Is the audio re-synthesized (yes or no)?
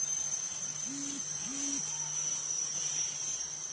no